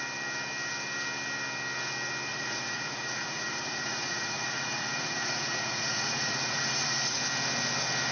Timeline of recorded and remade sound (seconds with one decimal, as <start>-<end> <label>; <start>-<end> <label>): 0.0-2.3 recorded; 2.3-7.2 remade; 7.2-8.1 recorded